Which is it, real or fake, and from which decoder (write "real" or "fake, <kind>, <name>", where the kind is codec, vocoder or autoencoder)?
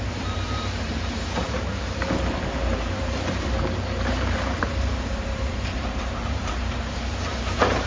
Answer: fake, vocoder, BigVGAN v2